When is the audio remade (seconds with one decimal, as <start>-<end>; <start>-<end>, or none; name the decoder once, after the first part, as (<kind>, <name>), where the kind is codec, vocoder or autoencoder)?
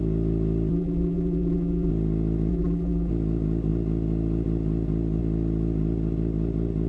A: 0.7-1.9 (vocoder, BigVGAN v2); 2.5-3.1